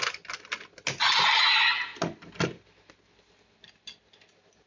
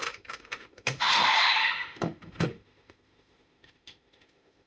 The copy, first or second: second